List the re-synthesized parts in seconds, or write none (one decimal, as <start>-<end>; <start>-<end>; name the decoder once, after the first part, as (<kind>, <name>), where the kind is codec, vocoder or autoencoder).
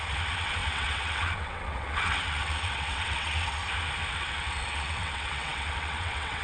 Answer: 0.0-3.6 (vocoder, WaveNeXt); 4.1-6.4